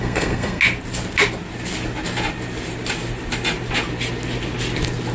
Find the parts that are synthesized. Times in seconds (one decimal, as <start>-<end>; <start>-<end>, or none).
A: 0.0-0.6